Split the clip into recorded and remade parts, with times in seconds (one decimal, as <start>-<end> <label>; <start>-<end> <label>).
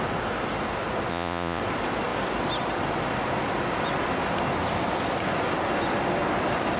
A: 0.0-1.1 recorded; 1.1-1.6 remade; 1.6-6.8 recorded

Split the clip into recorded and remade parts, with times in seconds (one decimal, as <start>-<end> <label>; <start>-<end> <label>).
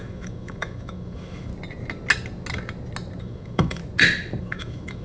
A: 0.0-1.5 remade; 1.5-3.2 recorded; 3.2-3.8 remade; 3.8-4.4 recorded; 4.4-5.0 remade